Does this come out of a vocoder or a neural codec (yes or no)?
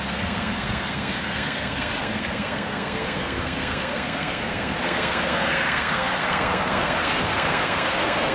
yes